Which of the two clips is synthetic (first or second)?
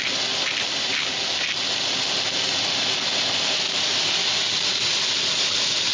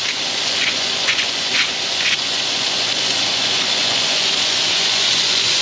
second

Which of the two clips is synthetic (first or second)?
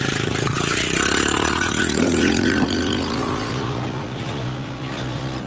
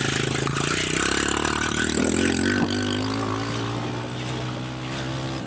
first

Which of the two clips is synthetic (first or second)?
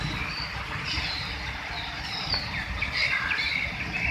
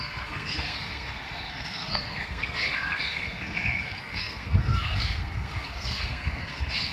second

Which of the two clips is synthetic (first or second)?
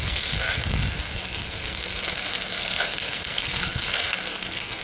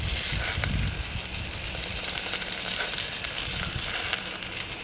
first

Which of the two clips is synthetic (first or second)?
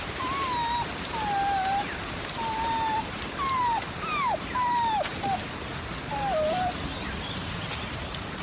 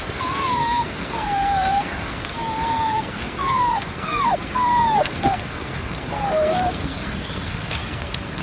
second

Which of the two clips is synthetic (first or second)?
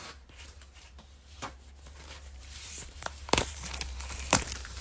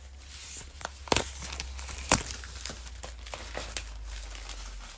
first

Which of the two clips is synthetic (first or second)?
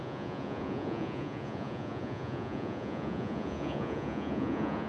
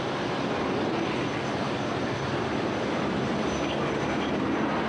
first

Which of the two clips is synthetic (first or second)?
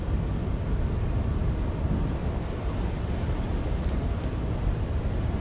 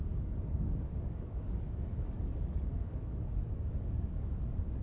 second